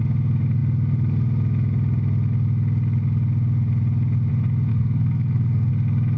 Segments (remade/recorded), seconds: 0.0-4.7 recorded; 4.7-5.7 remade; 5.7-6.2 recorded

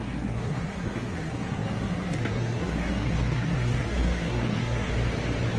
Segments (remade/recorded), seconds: 0.0-4.9 remade; 4.9-5.6 recorded

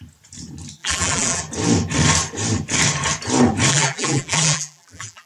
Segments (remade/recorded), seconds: 0.0-0.8 recorded; 0.8-1.4 remade; 1.4-3.7 recorded; 3.7-5.3 remade

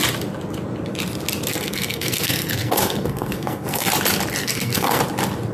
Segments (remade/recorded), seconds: 0.0-1.5 recorded; 1.5-3.9 remade; 3.9-4.4 recorded; 4.4-5.0 remade; 5.0-5.5 recorded

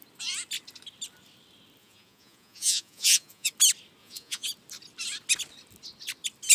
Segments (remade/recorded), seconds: 0.0-1.8 recorded; 1.8-3.5 remade; 3.5-4.0 recorded; 4.0-4.5 remade; 4.5-6.5 recorded

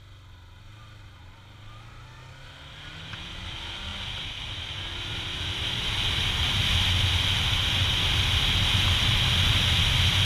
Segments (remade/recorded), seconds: 0.0-10.2 recorded

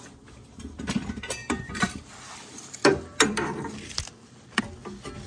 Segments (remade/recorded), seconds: 0.0-1.4 recorded; 1.4-4.6 remade; 4.6-5.3 recorded

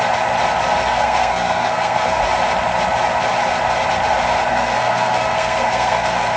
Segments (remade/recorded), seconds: 0.0-0.9 recorded; 0.9-2.2 remade; 2.2-4.5 recorded; 4.5-6.4 remade